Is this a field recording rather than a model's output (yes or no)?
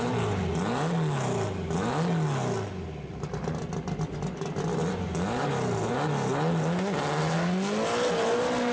yes